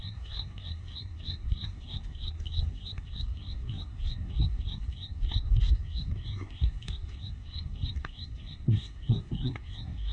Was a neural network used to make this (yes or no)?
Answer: yes